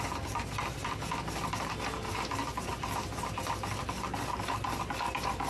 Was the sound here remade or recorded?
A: recorded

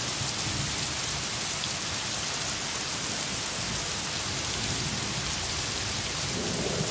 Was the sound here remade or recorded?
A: recorded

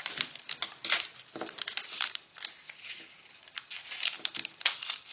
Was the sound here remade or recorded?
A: recorded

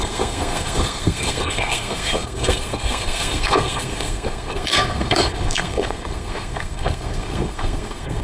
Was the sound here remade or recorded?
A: remade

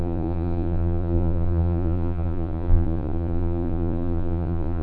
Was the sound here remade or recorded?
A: remade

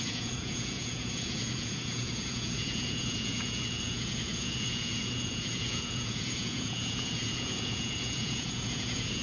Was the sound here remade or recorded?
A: remade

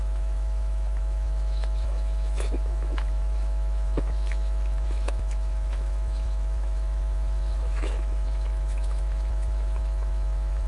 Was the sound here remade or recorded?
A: remade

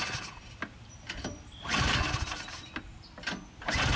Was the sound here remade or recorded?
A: recorded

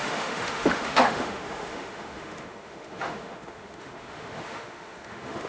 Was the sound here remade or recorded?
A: remade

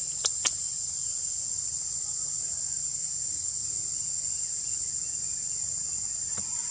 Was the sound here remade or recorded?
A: recorded